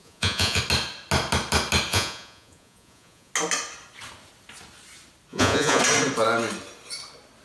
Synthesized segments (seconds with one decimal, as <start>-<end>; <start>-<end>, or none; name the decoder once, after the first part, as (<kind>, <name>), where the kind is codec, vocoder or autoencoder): 0.0-0.6 (vocoder, Vocos); 1.9-3.3; 5.3-5.8